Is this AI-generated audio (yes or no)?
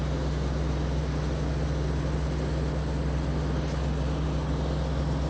no